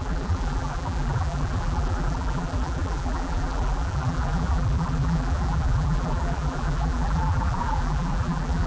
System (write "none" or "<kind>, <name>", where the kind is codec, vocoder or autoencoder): vocoder, BigVGAN v2